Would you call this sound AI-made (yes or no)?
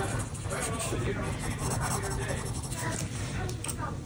no